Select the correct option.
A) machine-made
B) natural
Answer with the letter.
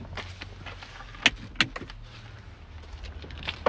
B